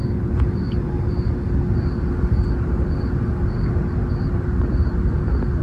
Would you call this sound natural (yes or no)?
yes